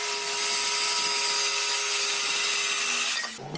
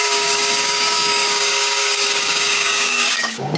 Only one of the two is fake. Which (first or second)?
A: second